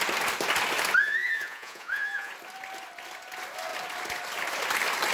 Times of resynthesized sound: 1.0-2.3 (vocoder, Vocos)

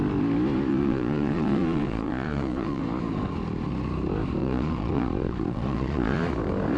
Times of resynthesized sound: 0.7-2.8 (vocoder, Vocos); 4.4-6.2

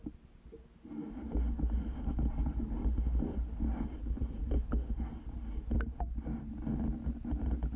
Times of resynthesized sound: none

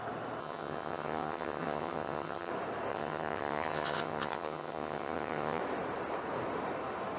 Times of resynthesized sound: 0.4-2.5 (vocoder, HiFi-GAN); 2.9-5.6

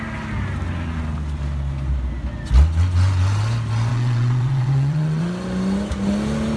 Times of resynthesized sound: 3.9-5.2 (vocoder, WaveNeXt)

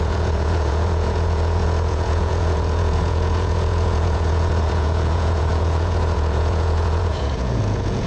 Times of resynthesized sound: 0.0-8.1 (vocoder, Vocos)